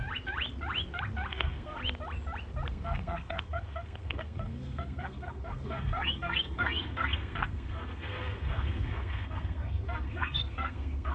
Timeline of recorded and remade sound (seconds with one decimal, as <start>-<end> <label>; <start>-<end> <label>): 0.0-1.3 recorded; 1.3-1.8 remade; 1.8-2.7 recorded; 2.7-11.1 remade